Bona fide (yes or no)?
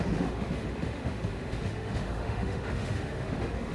no